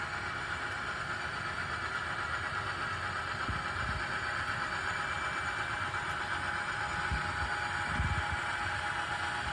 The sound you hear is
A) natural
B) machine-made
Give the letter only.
A